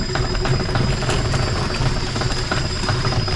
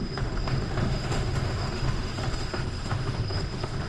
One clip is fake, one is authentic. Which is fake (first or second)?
second